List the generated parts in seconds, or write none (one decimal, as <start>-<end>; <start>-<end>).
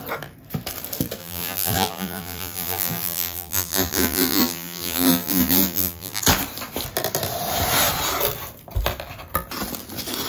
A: 1.2-6.2